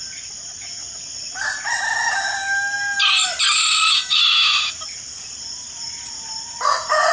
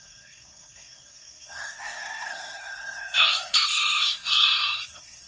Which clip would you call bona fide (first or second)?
first